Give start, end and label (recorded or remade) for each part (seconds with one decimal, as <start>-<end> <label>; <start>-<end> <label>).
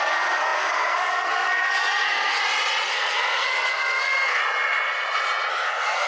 0.0-2.4 remade; 2.4-2.9 recorded; 2.9-4.4 remade; 4.4-5.5 recorded; 5.5-6.1 remade